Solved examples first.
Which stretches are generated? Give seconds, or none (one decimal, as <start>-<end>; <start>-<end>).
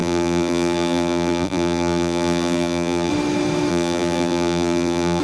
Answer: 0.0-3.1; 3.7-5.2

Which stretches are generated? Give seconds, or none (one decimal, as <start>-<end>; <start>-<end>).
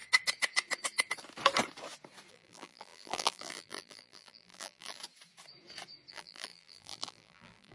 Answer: 2.3-5.0; 6.1-7.7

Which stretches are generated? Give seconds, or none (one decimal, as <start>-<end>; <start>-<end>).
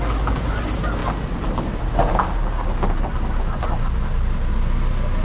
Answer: none